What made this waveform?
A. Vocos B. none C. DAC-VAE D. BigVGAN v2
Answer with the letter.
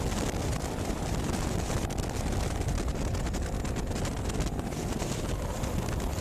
B